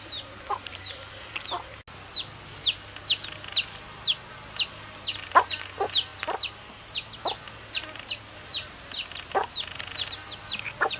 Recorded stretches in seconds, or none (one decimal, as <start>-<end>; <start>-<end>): 0.0-11.0